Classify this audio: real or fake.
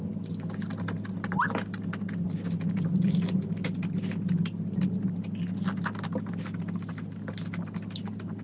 real